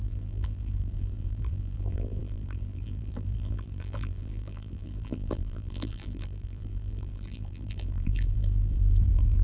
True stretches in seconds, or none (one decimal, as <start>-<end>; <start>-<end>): none